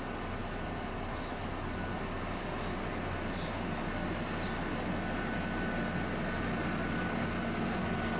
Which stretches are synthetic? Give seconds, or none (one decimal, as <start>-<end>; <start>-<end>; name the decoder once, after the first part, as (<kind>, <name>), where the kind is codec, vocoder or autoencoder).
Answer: none

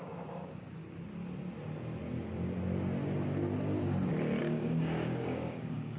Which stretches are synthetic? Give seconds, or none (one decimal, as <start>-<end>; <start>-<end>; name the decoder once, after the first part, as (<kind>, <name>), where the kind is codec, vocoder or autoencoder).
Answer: 0.0-0.8 (codec, DAC); 4.4-6.0

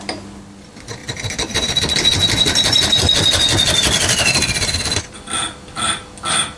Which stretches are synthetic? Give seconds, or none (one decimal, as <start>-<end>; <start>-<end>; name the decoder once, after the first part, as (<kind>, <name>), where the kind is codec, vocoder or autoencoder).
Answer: none

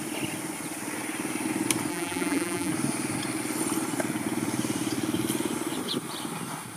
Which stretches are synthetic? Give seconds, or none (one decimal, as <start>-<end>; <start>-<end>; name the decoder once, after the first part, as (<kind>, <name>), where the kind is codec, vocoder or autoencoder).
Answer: 1.9-2.7 (vocoder, BigVGAN v2)